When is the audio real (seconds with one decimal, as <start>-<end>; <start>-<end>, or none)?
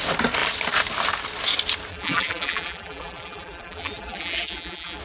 0.0-1.9